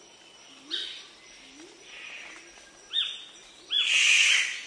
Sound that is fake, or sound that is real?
real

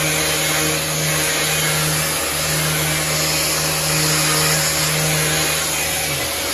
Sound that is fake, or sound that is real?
real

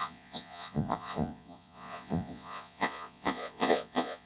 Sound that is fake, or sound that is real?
fake